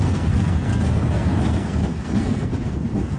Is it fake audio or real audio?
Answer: fake